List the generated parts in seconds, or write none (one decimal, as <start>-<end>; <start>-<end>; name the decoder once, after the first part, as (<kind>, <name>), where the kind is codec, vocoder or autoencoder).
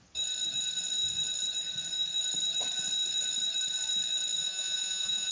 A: 4.4-5.3 (vocoder, Vocos)